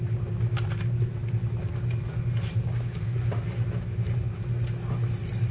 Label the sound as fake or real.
real